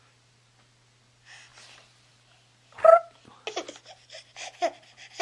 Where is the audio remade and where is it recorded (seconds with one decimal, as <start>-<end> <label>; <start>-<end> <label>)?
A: 0.0-5.2 recorded